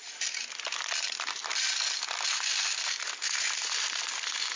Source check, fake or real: real